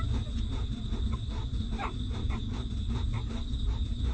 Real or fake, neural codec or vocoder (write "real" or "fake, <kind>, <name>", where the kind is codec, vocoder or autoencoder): real